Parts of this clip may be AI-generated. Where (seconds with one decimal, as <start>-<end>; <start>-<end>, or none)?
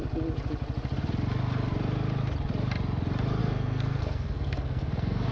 3.4-5.3